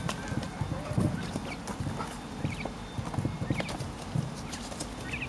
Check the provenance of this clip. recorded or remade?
recorded